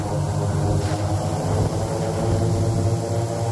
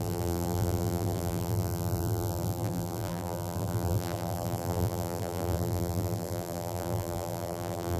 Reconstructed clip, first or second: second